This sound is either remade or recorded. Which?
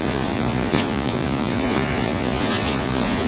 remade